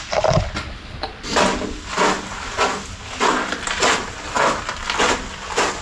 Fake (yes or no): no